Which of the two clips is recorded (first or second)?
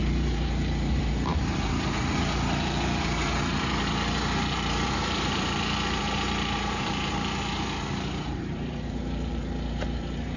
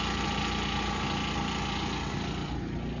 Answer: second